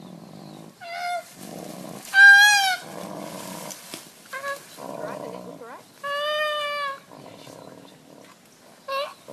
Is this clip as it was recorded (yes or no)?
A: yes